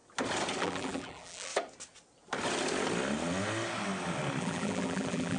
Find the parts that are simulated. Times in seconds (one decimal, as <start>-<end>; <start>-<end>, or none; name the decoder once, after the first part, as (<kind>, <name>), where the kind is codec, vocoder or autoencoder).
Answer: 0.6-1.5 (vocoder, BigVGAN v2); 4.4-5.4